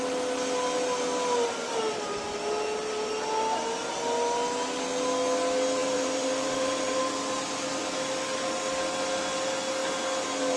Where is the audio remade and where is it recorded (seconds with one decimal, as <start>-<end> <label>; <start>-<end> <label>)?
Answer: 0.0-5.8 recorded; 5.8-7.0 remade; 7.0-10.6 recorded